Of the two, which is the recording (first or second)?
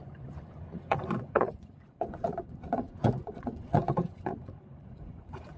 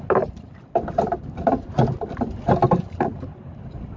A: second